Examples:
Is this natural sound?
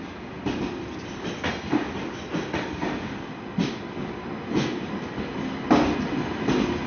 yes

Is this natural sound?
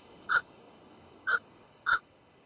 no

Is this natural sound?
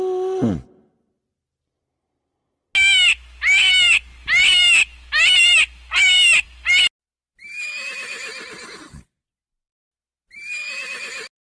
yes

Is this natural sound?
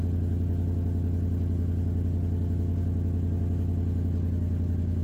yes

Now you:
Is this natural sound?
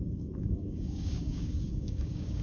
no